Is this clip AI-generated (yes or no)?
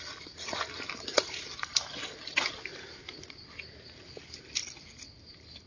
no